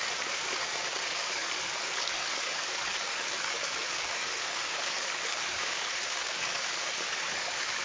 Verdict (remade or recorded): remade